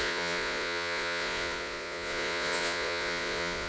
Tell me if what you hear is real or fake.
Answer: fake